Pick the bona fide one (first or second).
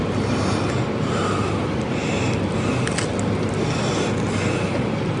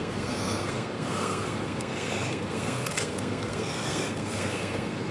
first